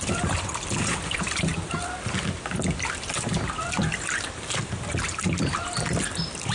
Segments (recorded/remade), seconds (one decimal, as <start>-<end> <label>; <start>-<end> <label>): 0.0-6.5 remade